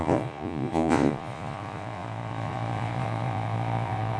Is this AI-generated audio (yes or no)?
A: yes